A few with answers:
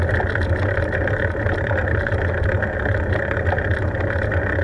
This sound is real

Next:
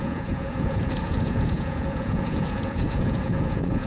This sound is fake